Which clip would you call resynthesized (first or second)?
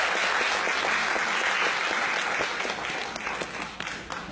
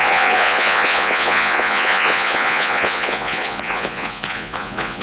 second